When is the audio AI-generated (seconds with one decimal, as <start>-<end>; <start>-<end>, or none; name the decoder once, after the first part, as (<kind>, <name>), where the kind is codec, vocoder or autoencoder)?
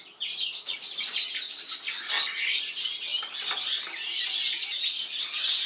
none